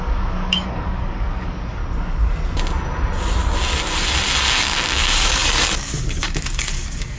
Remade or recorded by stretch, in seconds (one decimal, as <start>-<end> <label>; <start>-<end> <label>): 0.0-1.8 remade; 1.8-4.6 recorded; 4.6-7.2 remade